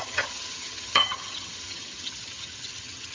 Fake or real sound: fake